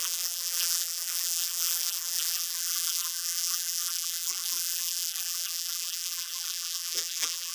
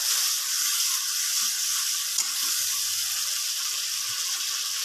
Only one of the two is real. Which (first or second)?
second